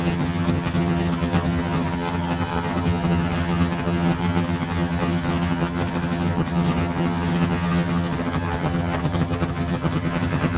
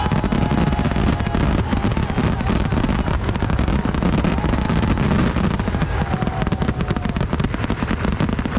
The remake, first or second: first